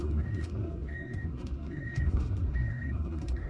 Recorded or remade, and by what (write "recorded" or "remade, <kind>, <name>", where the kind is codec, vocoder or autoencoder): remade, codec, SNAC